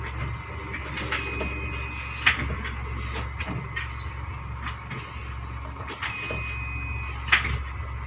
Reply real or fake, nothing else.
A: real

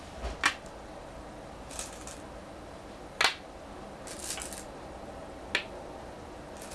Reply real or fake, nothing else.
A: real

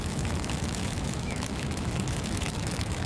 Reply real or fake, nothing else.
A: fake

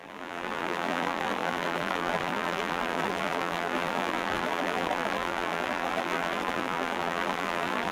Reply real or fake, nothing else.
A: fake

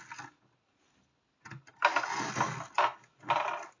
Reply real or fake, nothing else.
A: real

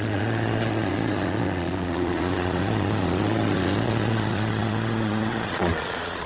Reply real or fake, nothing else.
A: fake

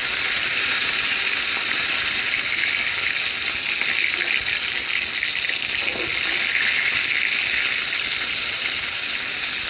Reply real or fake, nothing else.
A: real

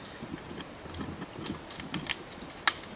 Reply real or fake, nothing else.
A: real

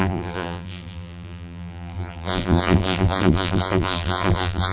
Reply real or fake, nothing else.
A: fake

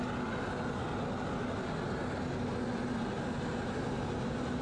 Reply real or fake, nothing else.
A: real